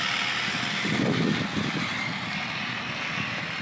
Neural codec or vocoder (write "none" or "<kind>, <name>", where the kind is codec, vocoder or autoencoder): none